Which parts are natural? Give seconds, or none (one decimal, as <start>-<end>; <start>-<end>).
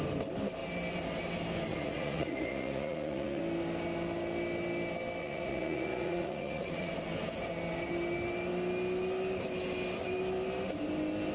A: 0.0-1.7; 3.4-5.2; 6.9-11.3